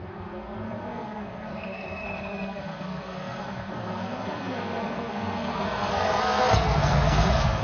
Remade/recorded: remade